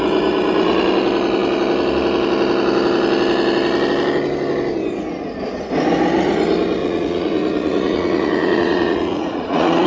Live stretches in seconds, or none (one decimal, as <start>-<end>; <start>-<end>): 0.0-6.8